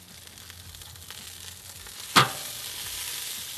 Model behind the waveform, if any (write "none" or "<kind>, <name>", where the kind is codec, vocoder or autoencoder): none